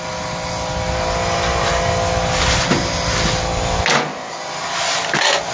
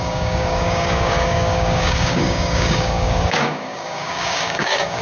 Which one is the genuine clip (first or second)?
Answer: first